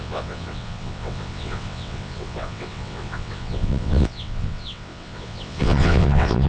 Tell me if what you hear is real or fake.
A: fake